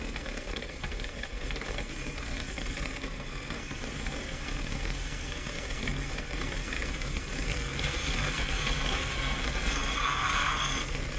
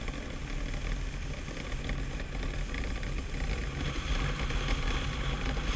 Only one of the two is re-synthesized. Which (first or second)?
first